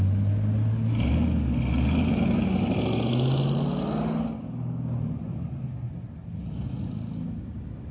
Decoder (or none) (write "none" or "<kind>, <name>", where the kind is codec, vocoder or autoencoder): none